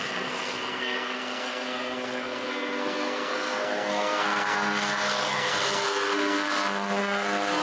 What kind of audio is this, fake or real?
fake